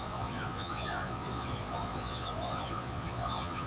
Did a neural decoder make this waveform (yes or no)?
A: yes